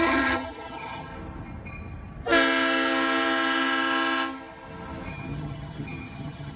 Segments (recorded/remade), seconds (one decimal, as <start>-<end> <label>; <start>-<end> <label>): 0.0-1.1 remade; 1.1-5.1 recorded; 5.1-6.6 remade